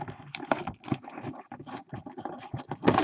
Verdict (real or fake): real